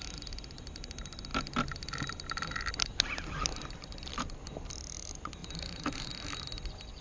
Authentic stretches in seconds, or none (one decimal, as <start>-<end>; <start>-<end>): 0.0-5.4; 6.1-7.0